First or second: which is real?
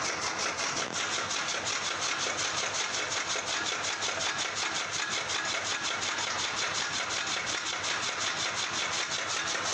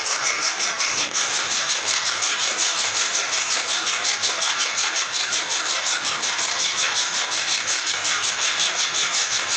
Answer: first